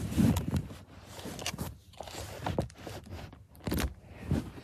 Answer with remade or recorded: recorded